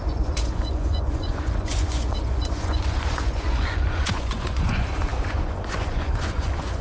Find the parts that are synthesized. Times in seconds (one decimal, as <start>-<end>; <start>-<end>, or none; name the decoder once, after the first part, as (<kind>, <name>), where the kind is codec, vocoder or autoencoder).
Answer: 0.0-6.8 (vocoder, Vocos)